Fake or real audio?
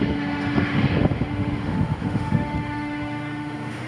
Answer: fake